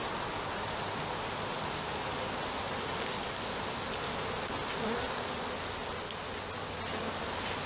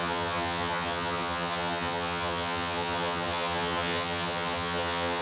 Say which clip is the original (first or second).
first